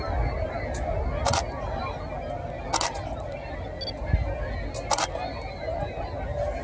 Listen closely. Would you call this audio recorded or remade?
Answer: recorded